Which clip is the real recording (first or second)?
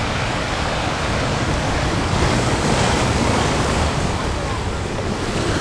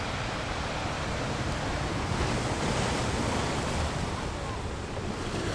second